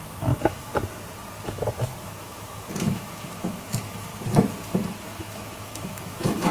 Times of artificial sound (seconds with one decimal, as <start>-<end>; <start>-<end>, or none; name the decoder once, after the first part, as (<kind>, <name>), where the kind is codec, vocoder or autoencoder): 0.0-0.7 (autoencoder, DAC-VAE); 2.0-4.1; 5.0-6.5